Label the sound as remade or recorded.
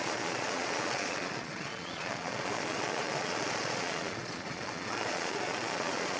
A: remade